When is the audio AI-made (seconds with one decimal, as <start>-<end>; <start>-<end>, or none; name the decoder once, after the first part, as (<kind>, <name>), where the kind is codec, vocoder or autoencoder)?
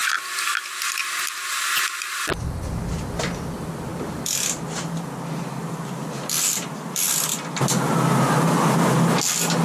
none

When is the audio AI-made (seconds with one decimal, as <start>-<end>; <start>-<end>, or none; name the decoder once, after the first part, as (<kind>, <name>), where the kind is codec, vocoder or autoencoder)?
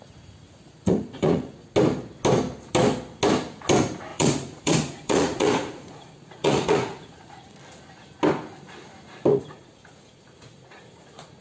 0.4-1.5 (vocoder, Vocos); 4.1-7.6; 9.3-11.4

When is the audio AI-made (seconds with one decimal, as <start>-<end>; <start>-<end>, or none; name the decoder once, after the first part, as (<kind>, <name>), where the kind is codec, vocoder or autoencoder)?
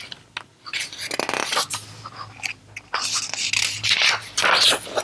none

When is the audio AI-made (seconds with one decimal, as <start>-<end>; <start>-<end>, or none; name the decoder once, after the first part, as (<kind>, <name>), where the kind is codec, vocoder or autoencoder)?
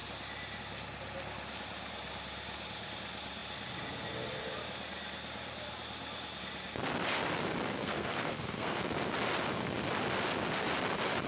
7.7-8.8 (codec, SNAC)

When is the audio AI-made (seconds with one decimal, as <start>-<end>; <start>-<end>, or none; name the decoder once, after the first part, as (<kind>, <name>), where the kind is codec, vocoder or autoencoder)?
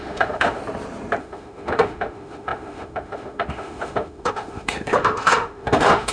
0.0-0.6 (autoencoder, DAC-VAE); 1.2-6.1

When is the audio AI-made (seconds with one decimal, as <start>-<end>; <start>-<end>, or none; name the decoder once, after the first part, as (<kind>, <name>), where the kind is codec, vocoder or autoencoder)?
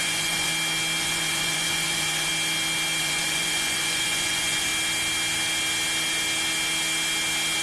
0.0-0.5 (vocoder, Vocos); 1.0-2.3; 3.0-4.7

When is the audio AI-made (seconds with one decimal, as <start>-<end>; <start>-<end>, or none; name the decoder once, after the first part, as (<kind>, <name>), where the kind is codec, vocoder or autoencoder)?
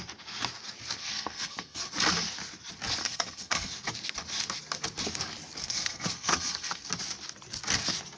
1.0-1.9 (codec, SNAC); 3.0-3.7; 5.6-6.9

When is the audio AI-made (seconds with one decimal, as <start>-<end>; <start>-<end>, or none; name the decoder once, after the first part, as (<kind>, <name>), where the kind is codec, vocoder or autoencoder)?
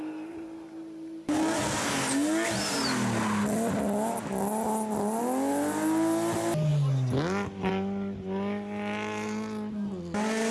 none